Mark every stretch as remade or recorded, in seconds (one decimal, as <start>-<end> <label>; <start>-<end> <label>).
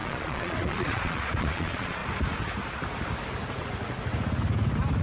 0.0-2.0 remade; 2.0-5.0 recorded